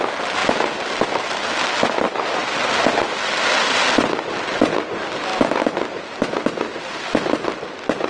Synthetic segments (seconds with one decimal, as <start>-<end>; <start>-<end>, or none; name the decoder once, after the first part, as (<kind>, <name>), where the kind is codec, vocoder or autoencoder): none